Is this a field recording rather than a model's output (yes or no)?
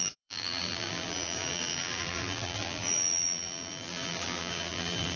no